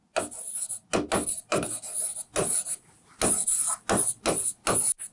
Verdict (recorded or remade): recorded